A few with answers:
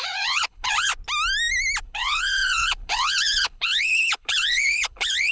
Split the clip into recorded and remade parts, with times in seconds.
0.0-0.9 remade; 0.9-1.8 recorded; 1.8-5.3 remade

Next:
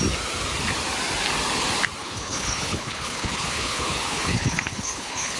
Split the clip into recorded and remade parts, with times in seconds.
0.0-2.0 recorded; 2.0-5.4 remade

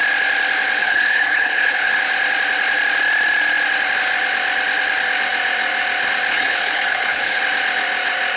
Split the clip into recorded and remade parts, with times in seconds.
0.0-0.8 recorded; 0.8-1.9 remade; 1.9-6.3 recorded; 6.3-7.4 remade; 7.4-8.4 recorded

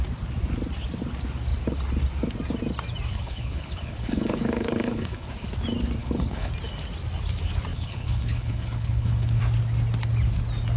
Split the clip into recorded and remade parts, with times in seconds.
0.0-3.1 recorded; 3.1-5.3 remade; 5.3-6.0 recorded; 6.0-6.5 remade; 6.5-7.7 recorded; 7.7-9.4 remade; 9.4-10.8 recorded

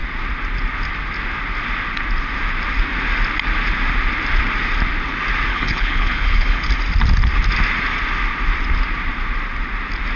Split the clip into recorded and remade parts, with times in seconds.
0.0-5.5 recorded; 5.5-6.7 remade; 6.7-10.2 recorded